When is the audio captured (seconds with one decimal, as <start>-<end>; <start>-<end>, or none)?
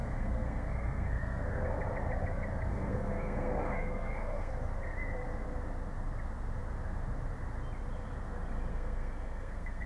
1.5-2.7; 4.5-8.7